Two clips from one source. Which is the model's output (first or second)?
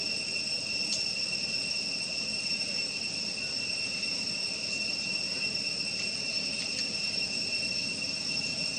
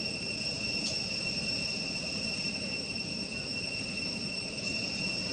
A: second